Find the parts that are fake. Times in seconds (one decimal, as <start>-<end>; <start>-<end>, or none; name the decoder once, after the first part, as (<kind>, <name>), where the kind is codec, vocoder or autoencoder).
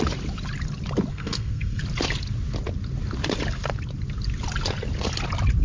1.1-1.8 (codec, SNAC)